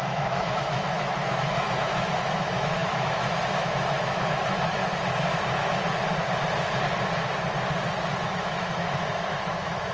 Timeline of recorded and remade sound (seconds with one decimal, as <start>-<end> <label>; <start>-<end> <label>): 0.0-4.8 remade; 4.8-8.2 recorded; 8.2-9.9 remade